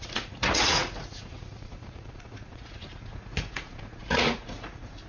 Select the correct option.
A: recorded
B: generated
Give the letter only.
B